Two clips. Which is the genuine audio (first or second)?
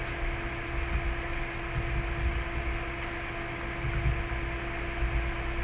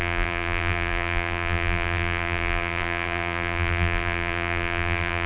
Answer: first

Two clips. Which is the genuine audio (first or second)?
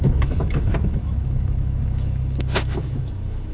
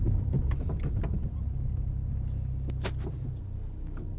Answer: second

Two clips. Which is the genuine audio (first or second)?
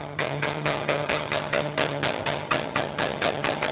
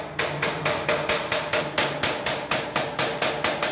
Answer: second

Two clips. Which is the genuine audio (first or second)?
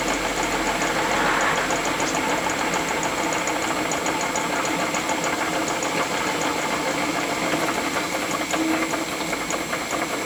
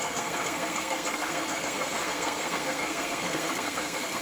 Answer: first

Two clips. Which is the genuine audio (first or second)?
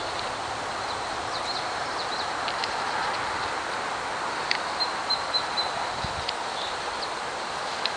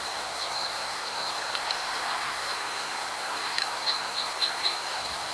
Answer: first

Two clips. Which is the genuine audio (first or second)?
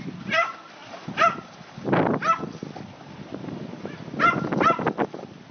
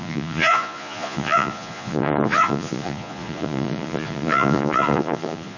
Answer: first